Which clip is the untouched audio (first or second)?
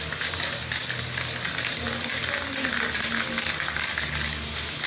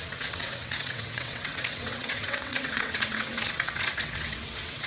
first